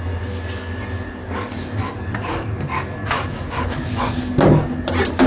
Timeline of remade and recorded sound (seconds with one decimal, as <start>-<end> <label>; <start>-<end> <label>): 0.0-1.2 recorded; 1.2-4.3 remade; 4.3-5.3 recorded